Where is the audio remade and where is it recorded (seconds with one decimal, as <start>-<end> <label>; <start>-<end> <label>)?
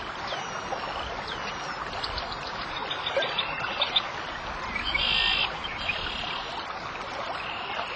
0.0-8.0 recorded